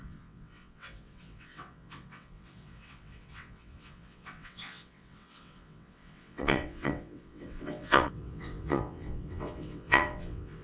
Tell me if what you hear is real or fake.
fake